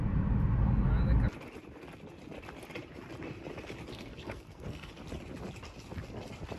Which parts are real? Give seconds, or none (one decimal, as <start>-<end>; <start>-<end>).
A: 0.0-3.9; 4.9-6.6